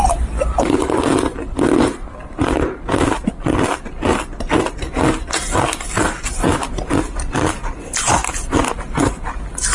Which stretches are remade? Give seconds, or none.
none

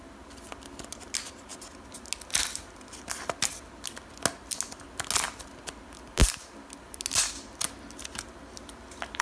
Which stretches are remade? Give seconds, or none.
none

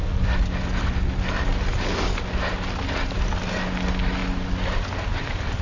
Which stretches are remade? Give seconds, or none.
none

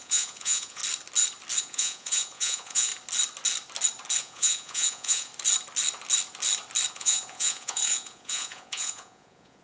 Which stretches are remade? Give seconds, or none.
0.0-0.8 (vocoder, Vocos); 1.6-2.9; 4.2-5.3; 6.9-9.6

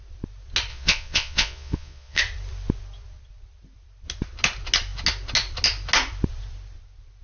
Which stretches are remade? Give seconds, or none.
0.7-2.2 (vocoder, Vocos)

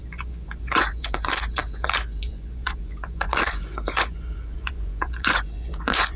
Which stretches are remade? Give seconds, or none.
0.0-6.2 (vocoder, Vocos)